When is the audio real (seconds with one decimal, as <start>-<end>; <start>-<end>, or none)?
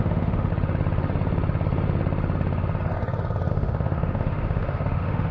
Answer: 0.5-3.5